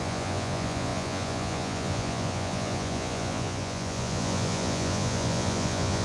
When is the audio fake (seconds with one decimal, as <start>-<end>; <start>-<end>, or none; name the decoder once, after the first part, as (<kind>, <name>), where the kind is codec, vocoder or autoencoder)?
0.0-6.0 (vocoder, Vocos)